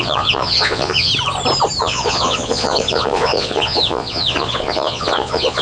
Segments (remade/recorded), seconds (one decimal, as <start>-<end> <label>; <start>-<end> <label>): 0.0-1.1 remade; 1.1-1.8 recorded; 1.8-5.6 remade